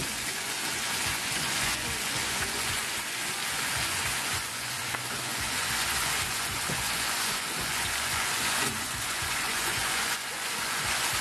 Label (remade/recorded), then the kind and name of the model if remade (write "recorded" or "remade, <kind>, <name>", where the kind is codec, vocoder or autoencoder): remade, vocoder, Vocos